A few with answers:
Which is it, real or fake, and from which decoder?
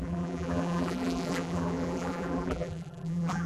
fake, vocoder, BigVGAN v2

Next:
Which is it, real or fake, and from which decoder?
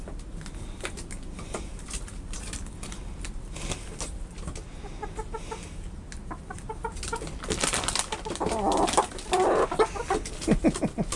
real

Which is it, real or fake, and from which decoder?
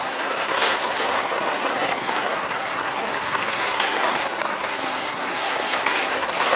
fake, codec, SNAC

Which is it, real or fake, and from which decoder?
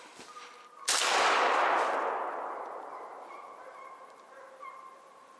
real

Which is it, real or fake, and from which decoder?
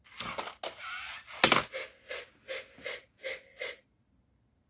real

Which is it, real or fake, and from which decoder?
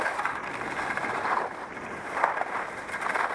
real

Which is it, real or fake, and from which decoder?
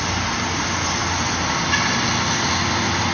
real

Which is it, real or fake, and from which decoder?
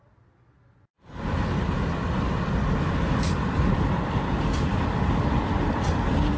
real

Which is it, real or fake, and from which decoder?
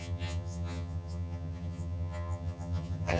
fake, vocoder, HiFi-GAN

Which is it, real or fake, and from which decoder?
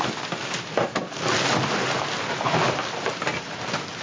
real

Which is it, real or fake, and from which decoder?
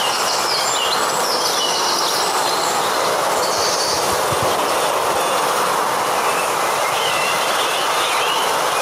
real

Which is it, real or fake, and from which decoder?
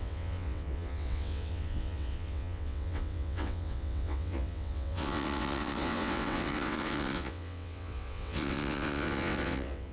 fake, vocoder, WaveNeXt